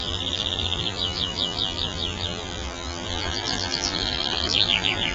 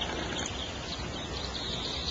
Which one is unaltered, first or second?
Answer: second